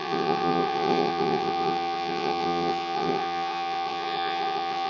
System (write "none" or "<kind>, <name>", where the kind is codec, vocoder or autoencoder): vocoder, WaveNeXt